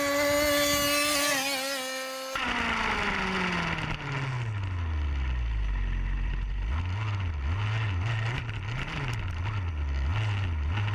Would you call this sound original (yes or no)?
yes